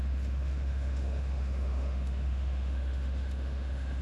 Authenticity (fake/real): fake